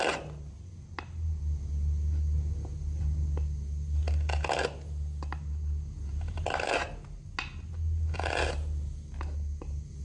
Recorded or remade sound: recorded